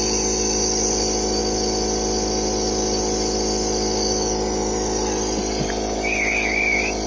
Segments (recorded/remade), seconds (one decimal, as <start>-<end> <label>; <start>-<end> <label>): 0.0-7.1 recorded